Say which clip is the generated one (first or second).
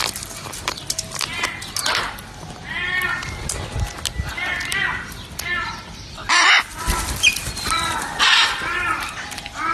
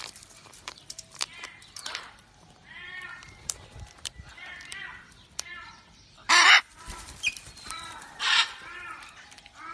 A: second